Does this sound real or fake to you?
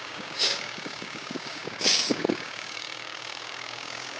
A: fake